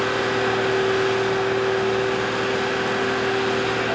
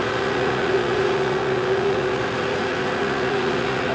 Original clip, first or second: first